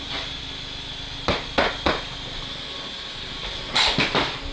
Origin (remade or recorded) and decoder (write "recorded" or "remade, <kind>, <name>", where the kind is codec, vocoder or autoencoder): recorded